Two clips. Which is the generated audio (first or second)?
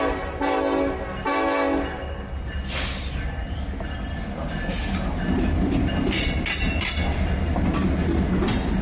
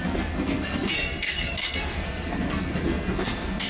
second